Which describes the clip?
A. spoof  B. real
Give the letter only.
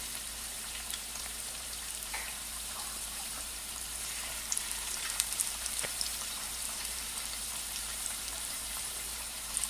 A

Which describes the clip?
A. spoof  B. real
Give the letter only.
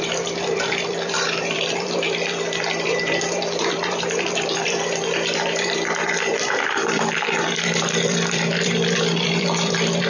A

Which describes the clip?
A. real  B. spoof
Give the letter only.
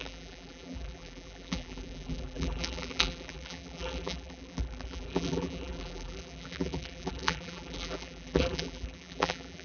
B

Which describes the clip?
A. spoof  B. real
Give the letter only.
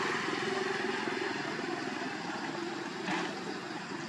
A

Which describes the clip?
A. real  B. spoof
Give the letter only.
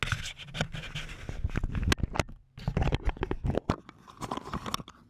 A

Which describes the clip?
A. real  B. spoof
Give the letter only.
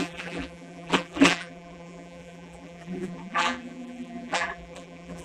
B